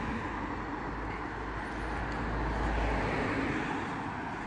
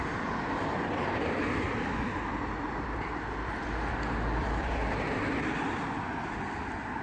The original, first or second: first